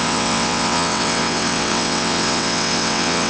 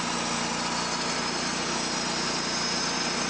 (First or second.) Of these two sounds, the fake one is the first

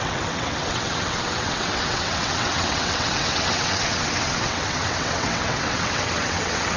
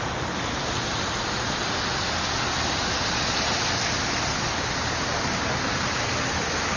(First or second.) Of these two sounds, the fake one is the first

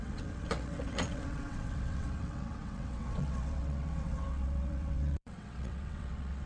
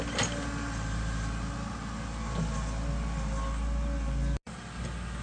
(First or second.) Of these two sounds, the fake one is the first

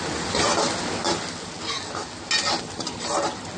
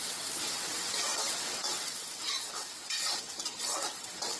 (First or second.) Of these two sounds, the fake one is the second